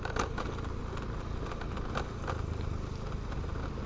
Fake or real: real